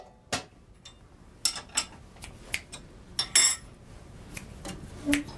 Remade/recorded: recorded